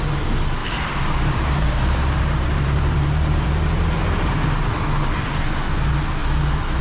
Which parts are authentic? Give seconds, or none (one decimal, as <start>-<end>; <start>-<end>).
0.0-0.6; 4.7-6.8